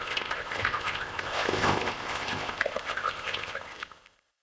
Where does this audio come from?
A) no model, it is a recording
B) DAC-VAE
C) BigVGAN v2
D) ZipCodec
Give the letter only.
D